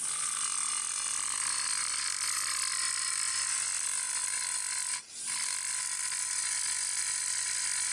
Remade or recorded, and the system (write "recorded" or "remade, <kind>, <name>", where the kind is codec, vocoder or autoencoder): recorded